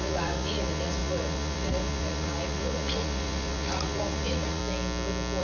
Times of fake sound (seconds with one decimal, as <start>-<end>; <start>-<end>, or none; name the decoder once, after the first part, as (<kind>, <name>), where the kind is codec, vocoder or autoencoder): 0.0-4.6 (vocoder, Vocos)